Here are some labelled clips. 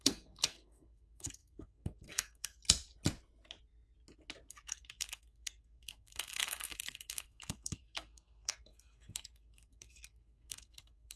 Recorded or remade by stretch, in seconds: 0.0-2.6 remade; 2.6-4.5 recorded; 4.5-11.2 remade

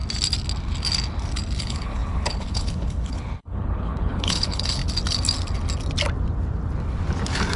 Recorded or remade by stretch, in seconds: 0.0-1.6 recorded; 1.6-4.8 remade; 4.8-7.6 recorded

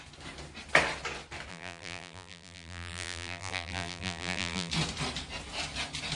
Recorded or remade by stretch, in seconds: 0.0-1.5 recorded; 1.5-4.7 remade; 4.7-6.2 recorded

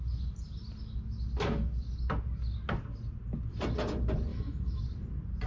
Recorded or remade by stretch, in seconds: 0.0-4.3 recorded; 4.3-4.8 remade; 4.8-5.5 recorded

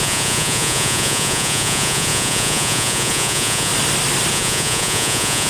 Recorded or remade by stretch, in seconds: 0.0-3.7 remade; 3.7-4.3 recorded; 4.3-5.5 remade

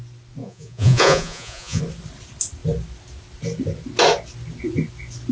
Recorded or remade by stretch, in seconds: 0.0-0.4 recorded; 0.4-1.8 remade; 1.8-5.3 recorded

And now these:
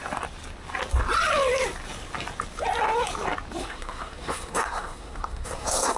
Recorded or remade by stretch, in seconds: 0.0-3.6 recorded; 3.6-6.0 remade

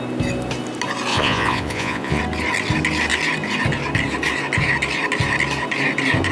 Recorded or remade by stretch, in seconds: 0.0-1.1 recorded; 1.1-2.2 remade; 2.2-6.3 recorded